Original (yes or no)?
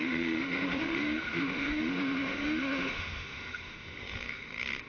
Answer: no